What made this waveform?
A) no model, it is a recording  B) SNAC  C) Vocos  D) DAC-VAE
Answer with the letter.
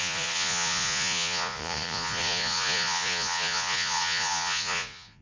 C